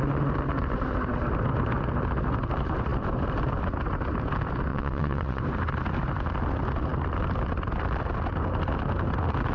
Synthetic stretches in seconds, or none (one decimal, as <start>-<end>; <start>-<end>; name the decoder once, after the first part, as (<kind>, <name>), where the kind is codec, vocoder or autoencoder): 4.7-5.4 (vocoder, WaveNeXt)

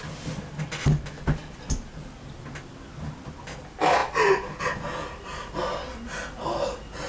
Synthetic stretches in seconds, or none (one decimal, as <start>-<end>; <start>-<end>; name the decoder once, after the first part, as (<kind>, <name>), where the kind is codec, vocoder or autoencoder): none

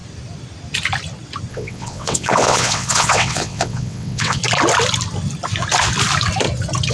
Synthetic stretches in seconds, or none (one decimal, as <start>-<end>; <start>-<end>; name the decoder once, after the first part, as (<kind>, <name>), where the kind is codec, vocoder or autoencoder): 1.5-4.4 (vocoder, WaveNeXt)

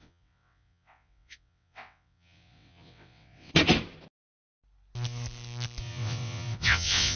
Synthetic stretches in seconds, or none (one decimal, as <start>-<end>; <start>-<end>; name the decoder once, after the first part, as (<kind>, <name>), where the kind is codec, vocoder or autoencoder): 0.0-3.5 (vocoder, WaveNeXt); 5.8-7.2

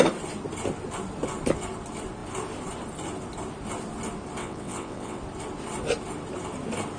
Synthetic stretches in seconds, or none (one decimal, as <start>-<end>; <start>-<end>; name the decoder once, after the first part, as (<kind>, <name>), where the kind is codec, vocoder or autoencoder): 4.4-5.2 (vocoder, WaveNeXt)

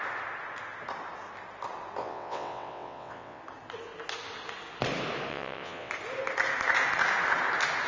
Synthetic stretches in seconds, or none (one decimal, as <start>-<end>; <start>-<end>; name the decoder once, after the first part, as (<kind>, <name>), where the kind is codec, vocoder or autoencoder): 2.0-3.4 (vocoder, WaveNeXt); 5.3-5.9

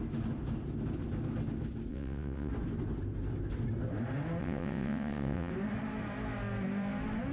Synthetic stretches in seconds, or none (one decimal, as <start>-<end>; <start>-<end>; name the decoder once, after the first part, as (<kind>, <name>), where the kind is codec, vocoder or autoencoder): 1.9-2.5 (vocoder, WaveNeXt); 4.4-5.5

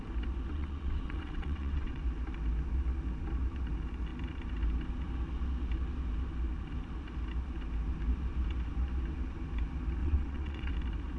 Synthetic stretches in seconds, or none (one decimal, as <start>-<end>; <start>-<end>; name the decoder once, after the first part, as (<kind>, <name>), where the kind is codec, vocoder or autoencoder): 0.5-2.0 (vocoder, WaveNeXt); 10.0-10.7